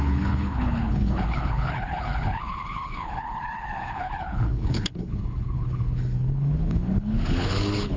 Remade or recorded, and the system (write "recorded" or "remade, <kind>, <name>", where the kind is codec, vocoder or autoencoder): remade, codec, HILCodec